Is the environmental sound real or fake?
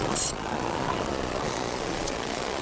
fake